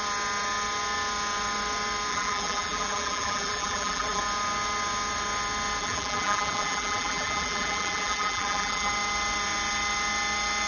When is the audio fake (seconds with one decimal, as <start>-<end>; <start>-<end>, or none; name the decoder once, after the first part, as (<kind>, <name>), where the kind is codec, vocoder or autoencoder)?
2.1-4.2 (vocoder, BigVGAN v2); 5.8-8.9